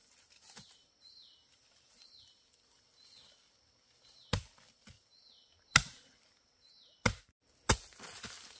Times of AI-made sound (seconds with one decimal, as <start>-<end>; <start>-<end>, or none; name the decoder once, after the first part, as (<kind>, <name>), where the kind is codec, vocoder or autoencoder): none